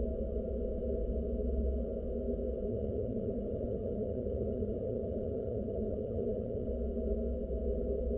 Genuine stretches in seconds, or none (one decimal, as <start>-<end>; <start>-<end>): 0.0-2.7; 6.7-8.2